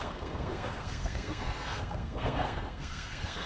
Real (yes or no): no